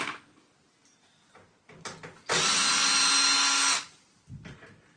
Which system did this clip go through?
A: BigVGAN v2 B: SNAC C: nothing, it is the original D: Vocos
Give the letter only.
C